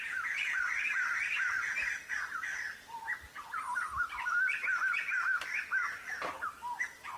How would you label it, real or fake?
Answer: real